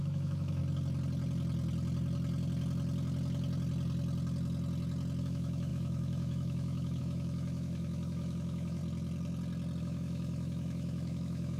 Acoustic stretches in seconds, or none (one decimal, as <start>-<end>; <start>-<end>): 0.6-5.2; 8.8-9.8